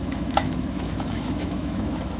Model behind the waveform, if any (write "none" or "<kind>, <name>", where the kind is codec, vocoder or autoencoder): autoencoder, DAC-VAE